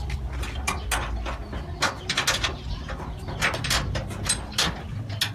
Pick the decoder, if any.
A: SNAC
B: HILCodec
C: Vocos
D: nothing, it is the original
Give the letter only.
D